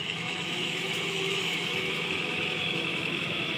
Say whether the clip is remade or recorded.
remade